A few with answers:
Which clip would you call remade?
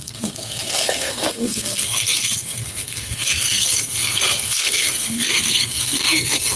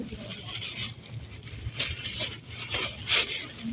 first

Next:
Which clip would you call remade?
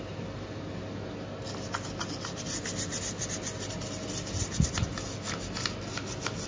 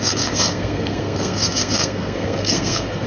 second